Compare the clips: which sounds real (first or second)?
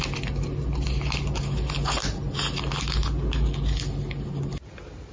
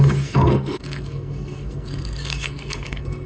first